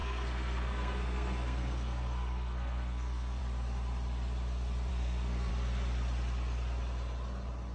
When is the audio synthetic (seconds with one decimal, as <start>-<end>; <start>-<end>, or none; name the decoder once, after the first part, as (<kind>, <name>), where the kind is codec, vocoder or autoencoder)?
0.0-3.4 (codec, SNAC); 4.9-5.5